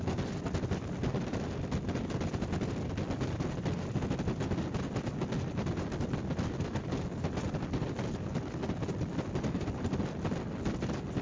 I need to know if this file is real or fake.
real